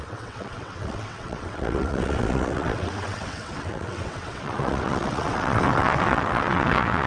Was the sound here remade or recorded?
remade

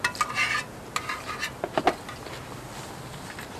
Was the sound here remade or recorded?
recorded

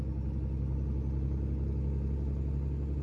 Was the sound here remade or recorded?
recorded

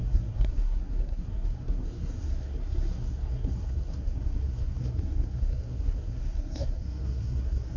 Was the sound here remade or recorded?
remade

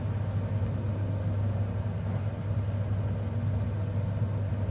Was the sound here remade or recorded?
recorded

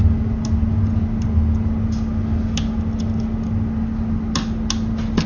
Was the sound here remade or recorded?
recorded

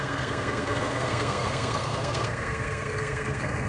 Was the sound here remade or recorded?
remade